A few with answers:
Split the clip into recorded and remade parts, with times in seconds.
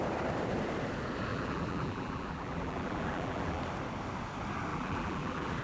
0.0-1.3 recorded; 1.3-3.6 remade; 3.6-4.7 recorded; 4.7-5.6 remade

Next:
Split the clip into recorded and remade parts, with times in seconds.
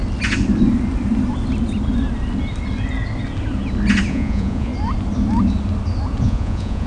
0.0-4.1 recorded; 4.1-4.7 remade; 4.7-6.2 recorded; 6.2-6.9 remade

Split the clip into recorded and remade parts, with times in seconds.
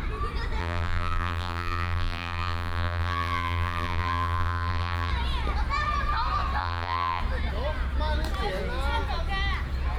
0.0-0.6 recorded; 0.6-5.1 remade; 5.1-6.6 recorded; 6.6-7.2 remade; 7.2-10.0 recorded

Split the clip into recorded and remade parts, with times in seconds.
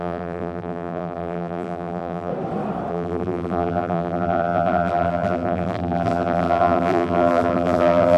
0.0-2.3 remade; 2.3-2.9 recorded; 2.9-8.2 remade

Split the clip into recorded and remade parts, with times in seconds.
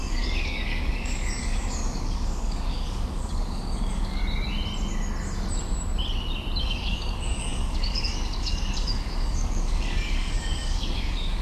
0.0-4.2 remade; 4.2-6.6 recorded; 6.6-11.4 remade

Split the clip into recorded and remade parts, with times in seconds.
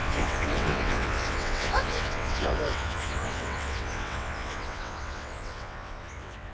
0.0-6.5 remade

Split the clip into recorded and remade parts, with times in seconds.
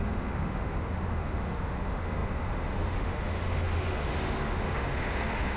0.0-5.6 remade